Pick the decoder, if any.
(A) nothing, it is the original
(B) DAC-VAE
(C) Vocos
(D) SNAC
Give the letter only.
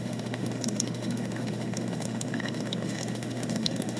B